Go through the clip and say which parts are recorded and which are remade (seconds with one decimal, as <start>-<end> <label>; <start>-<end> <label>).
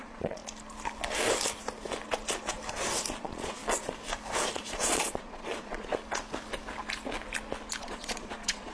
0.0-0.4 remade; 0.4-3.2 recorded; 3.2-3.6 remade; 3.6-4.6 recorded; 4.6-5.9 remade; 5.9-7.8 recorded; 7.8-8.7 remade